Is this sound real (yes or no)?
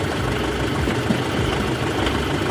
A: yes